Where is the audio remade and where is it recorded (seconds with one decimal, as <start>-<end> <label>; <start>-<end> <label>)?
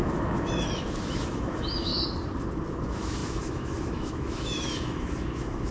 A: 0.0-1.9 remade; 1.9-2.8 recorded; 2.8-5.7 remade